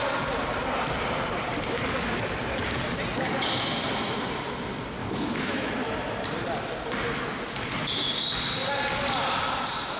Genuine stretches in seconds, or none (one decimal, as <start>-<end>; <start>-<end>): 0.0-5.0; 5.7-10.0